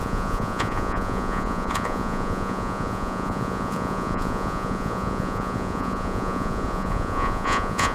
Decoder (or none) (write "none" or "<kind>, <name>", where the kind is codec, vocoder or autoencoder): vocoder, Vocos